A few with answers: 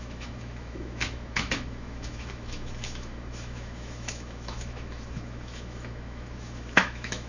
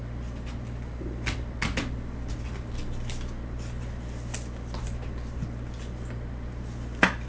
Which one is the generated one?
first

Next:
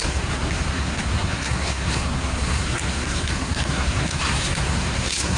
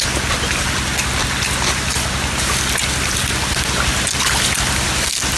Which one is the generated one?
first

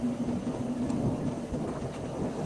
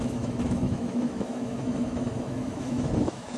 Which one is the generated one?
second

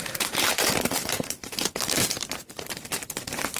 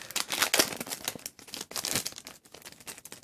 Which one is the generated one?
first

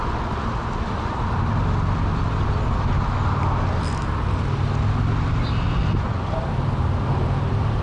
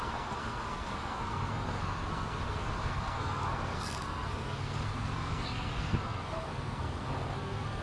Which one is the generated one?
second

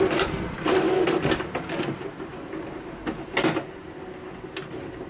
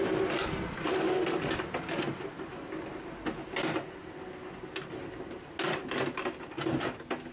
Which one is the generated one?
first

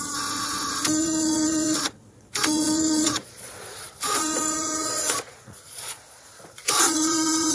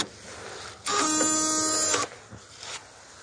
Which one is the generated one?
first